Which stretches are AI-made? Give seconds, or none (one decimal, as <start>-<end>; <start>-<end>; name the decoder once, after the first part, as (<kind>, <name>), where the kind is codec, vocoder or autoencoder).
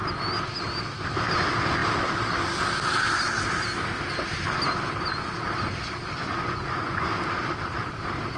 6.2-7.1 (vocoder, Vocos)